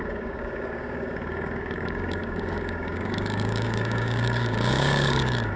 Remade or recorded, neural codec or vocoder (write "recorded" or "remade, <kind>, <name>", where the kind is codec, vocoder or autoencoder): remade, codec, DAC